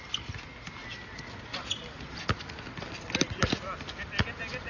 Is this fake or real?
real